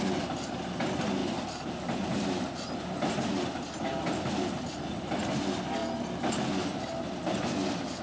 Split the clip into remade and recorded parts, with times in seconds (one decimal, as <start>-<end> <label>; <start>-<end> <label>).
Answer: 0.0-8.0 recorded